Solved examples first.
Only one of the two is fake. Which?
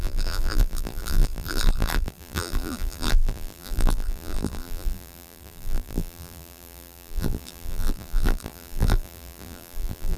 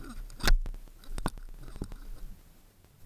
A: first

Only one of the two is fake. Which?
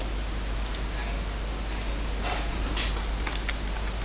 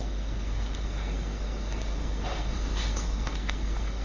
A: second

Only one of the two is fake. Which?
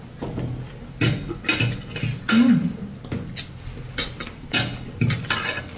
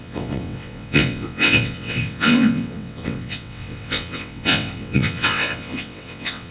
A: second